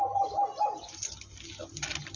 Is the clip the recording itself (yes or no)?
yes